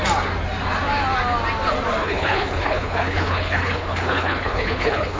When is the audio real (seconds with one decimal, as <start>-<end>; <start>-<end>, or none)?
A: 0.0-2.0